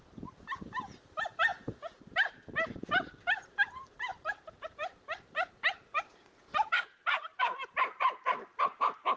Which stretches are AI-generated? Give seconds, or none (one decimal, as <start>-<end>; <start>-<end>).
0.0-9.2